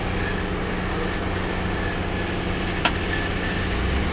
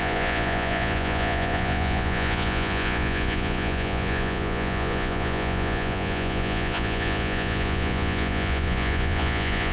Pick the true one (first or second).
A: first